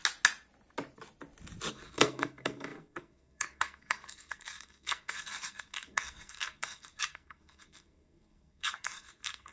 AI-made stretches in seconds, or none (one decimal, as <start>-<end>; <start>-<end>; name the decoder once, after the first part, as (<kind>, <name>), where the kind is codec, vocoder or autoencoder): 1.7-9.5 (codec, SNAC)